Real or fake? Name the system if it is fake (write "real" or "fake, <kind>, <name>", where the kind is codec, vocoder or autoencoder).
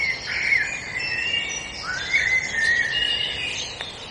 real